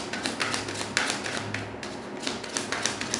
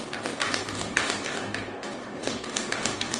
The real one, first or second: first